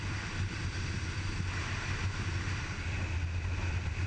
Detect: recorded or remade recorded